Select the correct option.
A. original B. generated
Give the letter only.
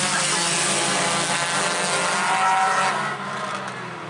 A